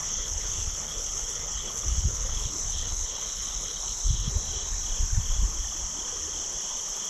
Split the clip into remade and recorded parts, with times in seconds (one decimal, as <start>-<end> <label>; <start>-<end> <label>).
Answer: 0.0-4.3 remade; 4.3-7.1 recorded